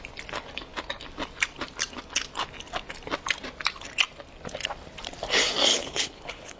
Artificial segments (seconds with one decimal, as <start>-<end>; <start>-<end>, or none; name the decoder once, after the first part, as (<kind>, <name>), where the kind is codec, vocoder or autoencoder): 5.7-6.6 (codec, HILCodec)